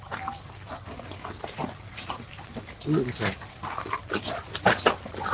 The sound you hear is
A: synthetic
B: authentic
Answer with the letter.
B